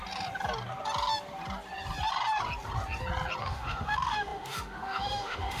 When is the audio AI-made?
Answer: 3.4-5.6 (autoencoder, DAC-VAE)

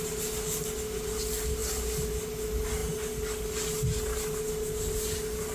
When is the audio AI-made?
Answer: none

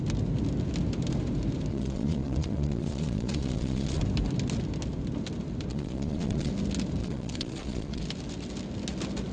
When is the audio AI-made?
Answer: 1.7-4.0 (vocoder, Vocos); 5.7-6.5; 7.0-8.0

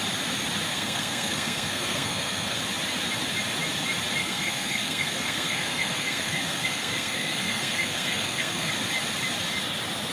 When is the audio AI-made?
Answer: 0.7-2.6 (codec, SNAC); 4.2-8.7

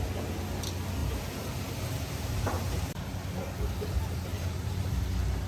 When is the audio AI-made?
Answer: 1.0-3.1 (vocoder, BigVGAN v2); 4.3-5.0